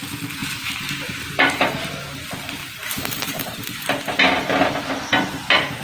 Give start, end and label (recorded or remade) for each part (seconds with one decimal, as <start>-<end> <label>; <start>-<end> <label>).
0.0-0.4 recorded; 0.4-1.9 remade; 1.9-2.6 recorded; 2.6-4.0 remade; 4.0-5.8 recorded